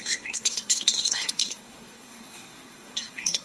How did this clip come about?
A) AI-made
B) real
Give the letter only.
A